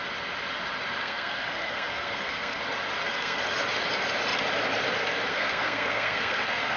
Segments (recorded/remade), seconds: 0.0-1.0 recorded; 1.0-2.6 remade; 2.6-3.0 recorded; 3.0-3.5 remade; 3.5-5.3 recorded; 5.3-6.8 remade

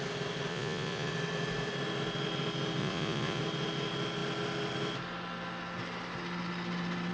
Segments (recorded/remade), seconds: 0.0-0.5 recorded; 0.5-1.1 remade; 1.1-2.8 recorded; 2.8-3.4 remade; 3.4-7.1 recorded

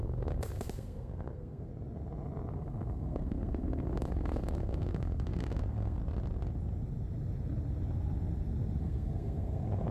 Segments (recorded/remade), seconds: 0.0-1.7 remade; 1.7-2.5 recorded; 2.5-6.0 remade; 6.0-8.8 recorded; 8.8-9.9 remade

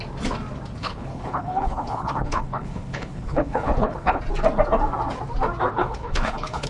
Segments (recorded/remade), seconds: 0.0-0.8 recorded; 0.8-4.2 remade; 4.2-5.7 recorded; 5.7-6.7 remade